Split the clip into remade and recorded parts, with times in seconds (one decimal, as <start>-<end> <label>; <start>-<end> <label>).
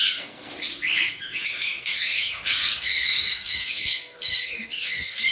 0.0-5.3 remade